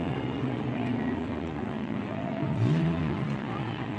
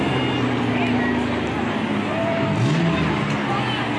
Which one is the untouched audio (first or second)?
second